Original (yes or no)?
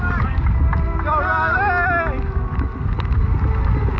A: yes